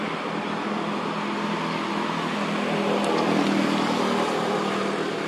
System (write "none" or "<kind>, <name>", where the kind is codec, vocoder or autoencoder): none